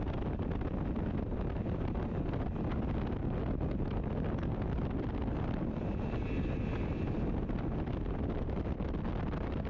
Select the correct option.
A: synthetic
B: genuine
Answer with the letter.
B